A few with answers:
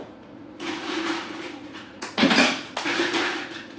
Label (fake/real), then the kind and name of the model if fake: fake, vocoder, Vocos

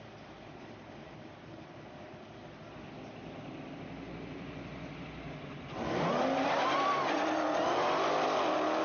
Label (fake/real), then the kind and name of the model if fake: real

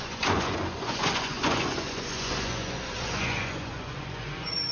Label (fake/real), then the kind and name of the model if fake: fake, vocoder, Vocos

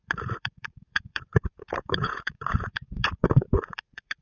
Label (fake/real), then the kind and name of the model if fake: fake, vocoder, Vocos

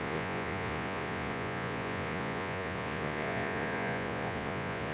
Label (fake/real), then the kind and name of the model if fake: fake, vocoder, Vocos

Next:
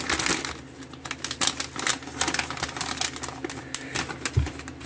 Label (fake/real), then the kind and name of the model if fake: real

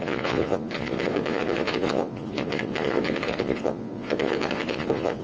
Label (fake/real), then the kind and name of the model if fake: fake, vocoder, Vocos